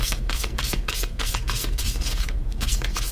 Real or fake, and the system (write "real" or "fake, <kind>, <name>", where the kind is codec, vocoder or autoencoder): fake, codec, SNAC